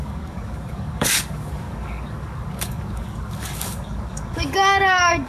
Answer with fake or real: fake